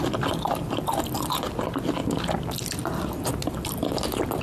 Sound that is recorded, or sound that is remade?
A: recorded